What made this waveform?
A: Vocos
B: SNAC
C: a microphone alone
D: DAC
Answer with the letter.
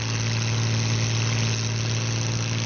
C